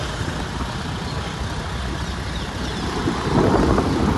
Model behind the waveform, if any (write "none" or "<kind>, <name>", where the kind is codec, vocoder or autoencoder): none